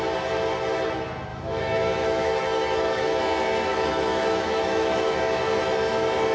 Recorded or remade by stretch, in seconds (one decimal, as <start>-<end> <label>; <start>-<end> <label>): 0.0-1.3 recorded; 1.3-3.2 remade; 3.2-3.7 recorded; 3.7-5.2 remade; 5.2-6.3 recorded